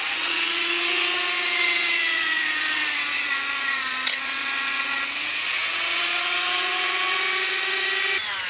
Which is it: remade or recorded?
remade